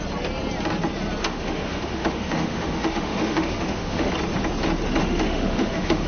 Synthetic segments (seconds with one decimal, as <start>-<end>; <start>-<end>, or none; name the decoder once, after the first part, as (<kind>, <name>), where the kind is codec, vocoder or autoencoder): 1.2-4.1 (autoencoder, DAC-VAE); 5.0-6.1